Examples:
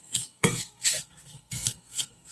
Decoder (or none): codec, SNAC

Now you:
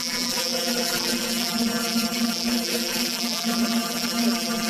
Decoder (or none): vocoder, BigVGAN v2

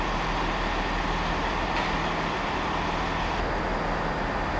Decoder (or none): none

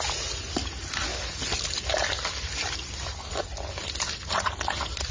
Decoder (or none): none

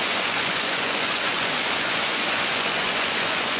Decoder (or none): vocoder, Vocos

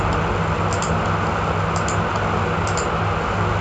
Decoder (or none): none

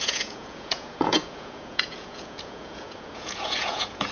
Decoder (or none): vocoder, Vocos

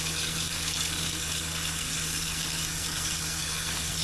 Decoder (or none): codec, SNAC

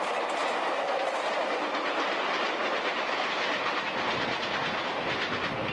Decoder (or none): none